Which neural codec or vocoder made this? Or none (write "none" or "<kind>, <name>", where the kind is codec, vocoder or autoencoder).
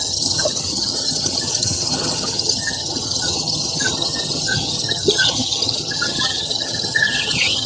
vocoder, HiFi-GAN